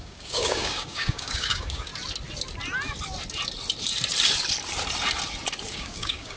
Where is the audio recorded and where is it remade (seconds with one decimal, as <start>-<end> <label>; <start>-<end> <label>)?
0.0-1.9 remade; 1.9-5.7 recorded; 5.7-6.4 remade